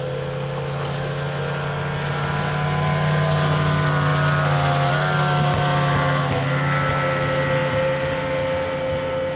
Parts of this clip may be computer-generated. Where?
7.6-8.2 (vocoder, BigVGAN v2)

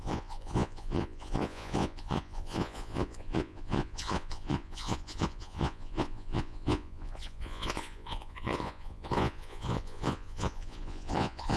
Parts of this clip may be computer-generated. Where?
0.0-11.6 (vocoder, Vocos)

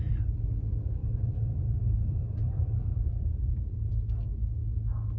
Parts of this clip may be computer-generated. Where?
1.0-3.9 (vocoder, BigVGAN v2)